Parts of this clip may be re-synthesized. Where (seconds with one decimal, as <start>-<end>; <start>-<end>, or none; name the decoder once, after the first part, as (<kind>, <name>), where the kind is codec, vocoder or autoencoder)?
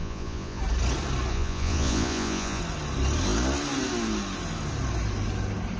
0.0-0.6 (vocoder, Vocos); 1.3-2.6